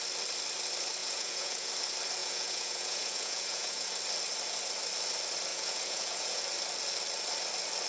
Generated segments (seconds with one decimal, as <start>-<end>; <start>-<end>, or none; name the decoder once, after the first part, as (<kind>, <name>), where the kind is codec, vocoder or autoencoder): 1.0-1.7 (vocoder, Vocos); 2.2-3.9; 5.5-6.4